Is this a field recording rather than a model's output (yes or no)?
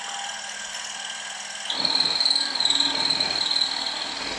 yes